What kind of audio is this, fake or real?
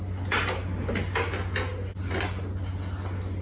real